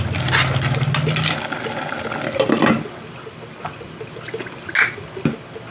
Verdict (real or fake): real